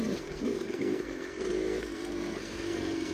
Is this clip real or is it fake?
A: fake